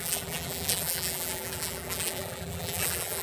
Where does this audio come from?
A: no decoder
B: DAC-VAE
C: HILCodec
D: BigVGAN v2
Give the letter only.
D